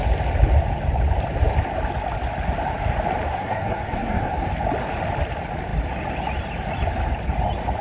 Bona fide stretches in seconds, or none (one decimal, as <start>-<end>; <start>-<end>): 0.0-3.3; 4.5-7.8